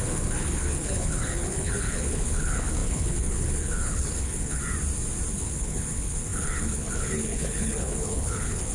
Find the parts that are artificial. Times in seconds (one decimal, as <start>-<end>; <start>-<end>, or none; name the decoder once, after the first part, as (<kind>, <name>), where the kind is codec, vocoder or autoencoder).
0.0-4.6 (codec, HILCodec); 5.3-8.7